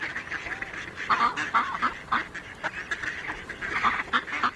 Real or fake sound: real